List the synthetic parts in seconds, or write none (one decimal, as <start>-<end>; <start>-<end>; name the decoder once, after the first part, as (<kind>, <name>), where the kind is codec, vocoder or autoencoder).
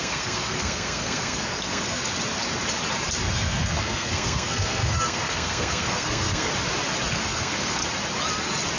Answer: 0.0-2.0 (codec, SNAC); 3.3-6.5; 7.1-7.8